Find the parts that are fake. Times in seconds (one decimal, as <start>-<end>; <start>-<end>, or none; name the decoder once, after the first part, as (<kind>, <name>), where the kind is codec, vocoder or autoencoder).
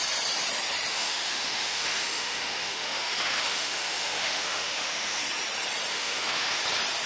0.9-5.2 (autoencoder, DAC-VAE); 5.9-6.6